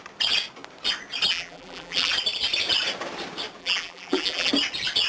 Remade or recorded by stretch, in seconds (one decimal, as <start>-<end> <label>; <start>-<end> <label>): 0.0-1.3 recorded; 1.3-2.1 remade; 2.1-3.6 recorded; 3.6-4.5 remade; 4.5-5.1 recorded